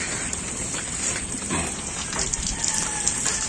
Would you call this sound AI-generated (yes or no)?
no